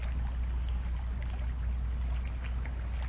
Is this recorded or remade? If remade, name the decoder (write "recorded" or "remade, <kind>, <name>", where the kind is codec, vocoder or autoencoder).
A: recorded